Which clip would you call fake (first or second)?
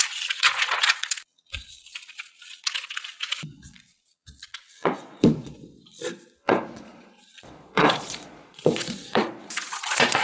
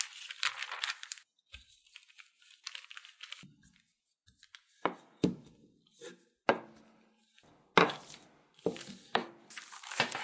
first